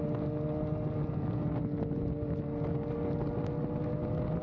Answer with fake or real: real